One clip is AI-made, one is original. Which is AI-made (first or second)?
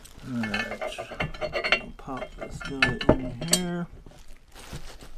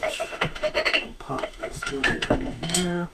second